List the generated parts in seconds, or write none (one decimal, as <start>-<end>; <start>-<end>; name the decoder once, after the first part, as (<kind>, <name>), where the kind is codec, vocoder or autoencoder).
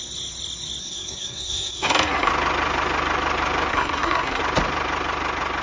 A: 0.8-2.3 (codec, SNAC); 3.7-4.4